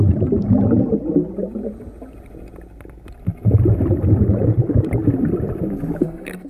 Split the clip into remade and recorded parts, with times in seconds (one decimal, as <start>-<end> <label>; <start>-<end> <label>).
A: 0.0-6.0 recorded; 6.0-6.5 remade